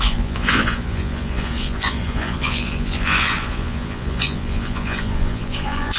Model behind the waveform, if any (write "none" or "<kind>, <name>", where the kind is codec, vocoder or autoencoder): vocoder, Vocos